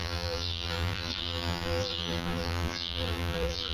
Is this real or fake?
fake